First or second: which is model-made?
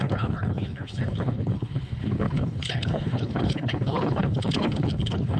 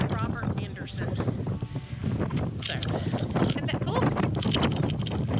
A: first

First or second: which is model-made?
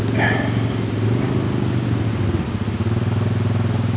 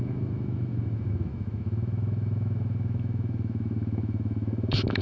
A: second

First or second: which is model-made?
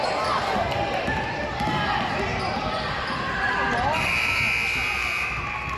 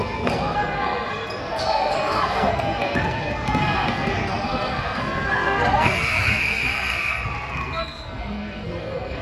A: second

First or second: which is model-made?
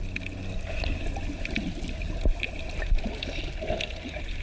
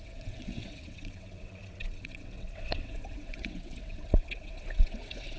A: second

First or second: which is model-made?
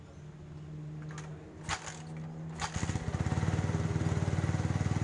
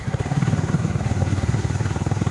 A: second